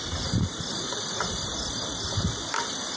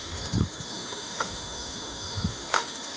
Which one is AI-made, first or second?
second